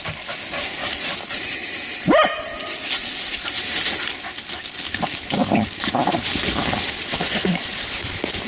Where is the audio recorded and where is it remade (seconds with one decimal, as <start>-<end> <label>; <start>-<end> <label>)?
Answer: 0.0-7.1 recorded; 7.1-7.7 remade; 7.7-8.5 recorded